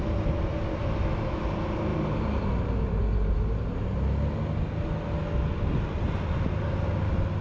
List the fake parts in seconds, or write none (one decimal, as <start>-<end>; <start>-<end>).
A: 0.7-1.5